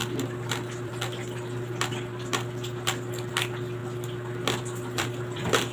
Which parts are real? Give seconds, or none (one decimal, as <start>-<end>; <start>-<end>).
0.0-0.5; 0.9-3.3; 3.8-4.6